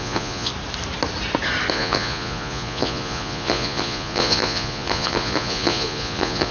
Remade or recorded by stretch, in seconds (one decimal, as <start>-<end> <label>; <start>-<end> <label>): 0.0-0.5 remade; 0.5-1.7 recorded; 1.7-6.5 remade